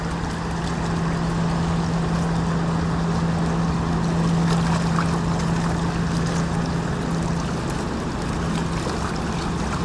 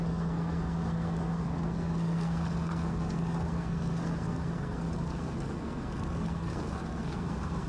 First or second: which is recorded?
first